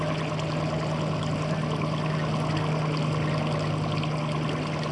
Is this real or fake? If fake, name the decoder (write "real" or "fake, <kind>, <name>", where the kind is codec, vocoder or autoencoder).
real